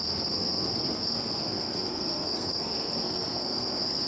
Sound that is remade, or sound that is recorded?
remade